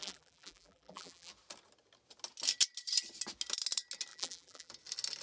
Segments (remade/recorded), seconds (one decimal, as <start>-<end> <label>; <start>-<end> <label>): 0.0-1.3 remade; 1.3-4.1 recorded; 4.1-4.7 remade; 4.7-5.2 recorded